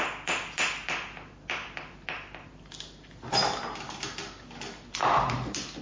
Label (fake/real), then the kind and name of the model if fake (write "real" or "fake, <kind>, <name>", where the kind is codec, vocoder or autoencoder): real